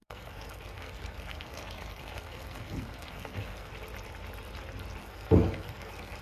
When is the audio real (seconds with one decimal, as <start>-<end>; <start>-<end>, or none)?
3.7-5.0